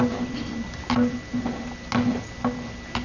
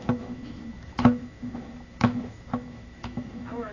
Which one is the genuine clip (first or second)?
first